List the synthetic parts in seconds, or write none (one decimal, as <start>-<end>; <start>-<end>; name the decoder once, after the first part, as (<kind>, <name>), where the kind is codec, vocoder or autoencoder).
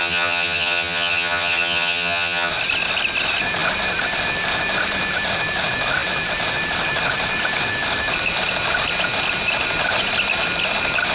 0.0-2.5 (vocoder, HiFi-GAN)